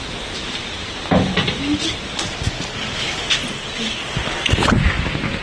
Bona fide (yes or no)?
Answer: yes